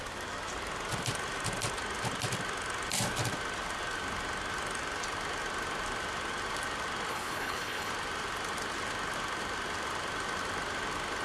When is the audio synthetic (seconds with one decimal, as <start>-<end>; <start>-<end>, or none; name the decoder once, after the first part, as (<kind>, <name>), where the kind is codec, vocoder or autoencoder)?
7.1-7.9 (codec, HILCodec)